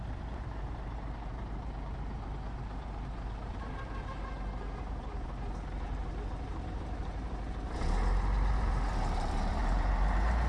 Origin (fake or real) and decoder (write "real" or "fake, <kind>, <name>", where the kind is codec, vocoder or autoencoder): fake, vocoder, BigVGAN v2